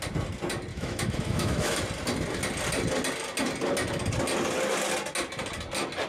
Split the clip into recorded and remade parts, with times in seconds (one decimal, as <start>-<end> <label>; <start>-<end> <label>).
0.0-0.7 recorded; 0.7-1.8 remade; 1.8-6.1 recorded